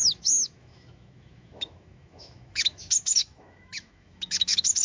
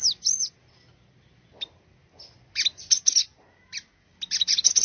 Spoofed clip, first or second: first